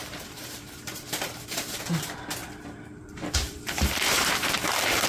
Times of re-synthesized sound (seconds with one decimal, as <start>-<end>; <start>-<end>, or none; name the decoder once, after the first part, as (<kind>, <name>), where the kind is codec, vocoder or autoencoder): 0.0-1.8 (vocoder, BigVGAN v2); 2.4-5.1